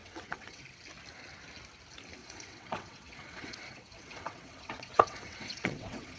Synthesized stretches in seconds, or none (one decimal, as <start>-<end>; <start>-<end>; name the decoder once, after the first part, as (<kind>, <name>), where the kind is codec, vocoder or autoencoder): 0.0-0.6 (vocoder, WaveNeXt); 2.2-6.2